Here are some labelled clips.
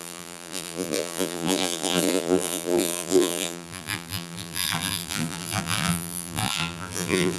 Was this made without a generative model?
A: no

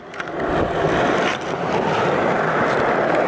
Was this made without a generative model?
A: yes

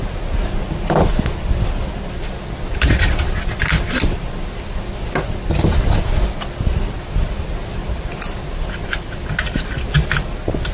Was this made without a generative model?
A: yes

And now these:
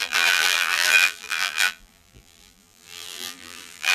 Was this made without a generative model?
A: no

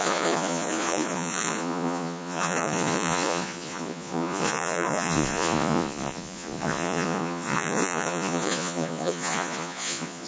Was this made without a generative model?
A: no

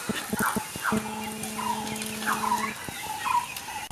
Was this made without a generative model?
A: yes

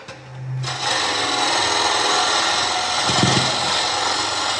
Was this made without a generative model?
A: yes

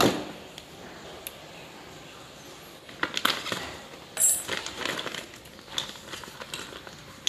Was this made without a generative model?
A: yes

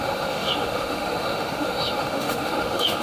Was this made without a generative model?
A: no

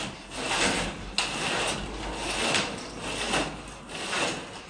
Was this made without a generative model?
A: yes